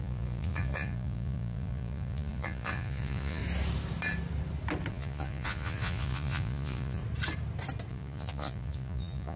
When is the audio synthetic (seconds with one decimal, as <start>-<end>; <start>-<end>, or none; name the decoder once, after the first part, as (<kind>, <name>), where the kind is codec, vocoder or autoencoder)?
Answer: 0.0-3.4 (vocoder, Vocos); 4.9-7.0; 7.9-9.4